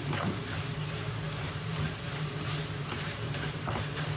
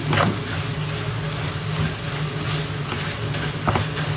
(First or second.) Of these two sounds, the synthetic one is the first